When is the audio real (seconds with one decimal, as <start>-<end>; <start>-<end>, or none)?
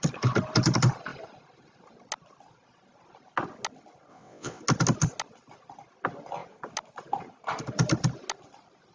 0.0-4.1; 4.6-8.9